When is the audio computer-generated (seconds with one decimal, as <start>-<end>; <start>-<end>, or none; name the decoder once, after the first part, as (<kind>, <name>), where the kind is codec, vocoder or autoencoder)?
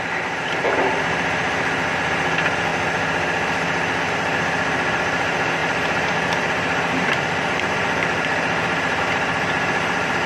0.0-2.7 (vocoder, BigVGAN v2); 4.1-10.3